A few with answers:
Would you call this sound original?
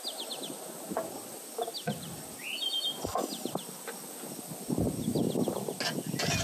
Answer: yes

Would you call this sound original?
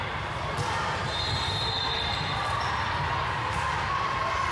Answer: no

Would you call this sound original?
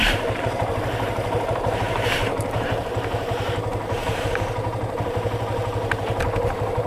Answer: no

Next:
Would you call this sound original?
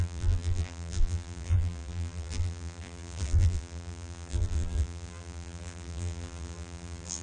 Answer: no